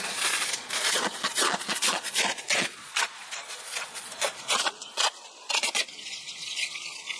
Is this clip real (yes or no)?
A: no